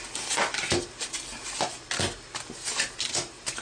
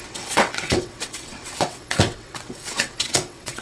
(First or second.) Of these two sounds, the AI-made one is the second